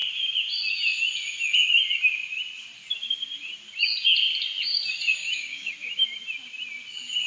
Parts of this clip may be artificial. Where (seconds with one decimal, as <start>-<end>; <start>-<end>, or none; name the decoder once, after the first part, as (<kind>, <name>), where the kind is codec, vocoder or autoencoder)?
5.2-5.7 (codec, DAC)